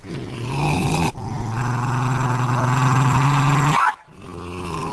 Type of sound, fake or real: real